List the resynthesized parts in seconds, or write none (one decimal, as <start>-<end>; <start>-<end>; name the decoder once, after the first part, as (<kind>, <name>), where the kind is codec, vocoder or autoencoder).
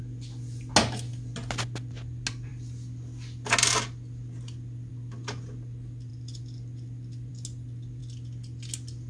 none